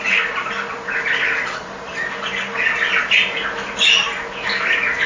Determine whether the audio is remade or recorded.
recorded